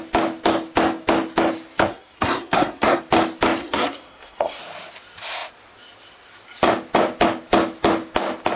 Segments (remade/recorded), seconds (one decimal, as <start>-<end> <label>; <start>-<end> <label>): 0.0-1.9 recorded; 1.9-3.0 remade; 3.0-3.6 recorded; 3.6-4.6 remade; 4.6-8.6 recorded